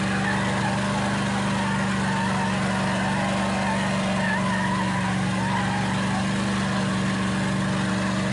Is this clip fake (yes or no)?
no